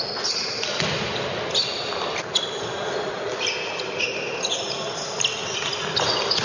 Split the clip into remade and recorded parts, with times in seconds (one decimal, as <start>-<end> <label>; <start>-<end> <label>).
0.0-6.4 recorded